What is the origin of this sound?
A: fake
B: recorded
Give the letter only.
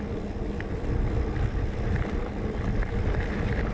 B